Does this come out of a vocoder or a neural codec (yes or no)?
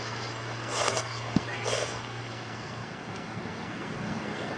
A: yes